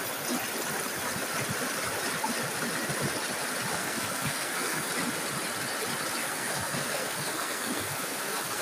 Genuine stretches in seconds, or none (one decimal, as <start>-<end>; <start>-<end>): 0.0-3.8; 4.9-6.2